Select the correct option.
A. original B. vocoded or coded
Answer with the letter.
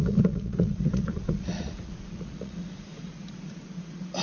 B